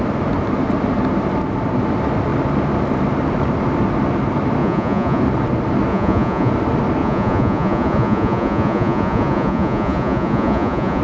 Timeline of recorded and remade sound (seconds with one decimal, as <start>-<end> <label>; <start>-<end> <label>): 0.0-4.6 recorded; 4.6-5.2 remade; 5.2-5.9 recorded; 5.9-6.5 remade; 6.5-7.0 recorded; 7.0-11.0 remade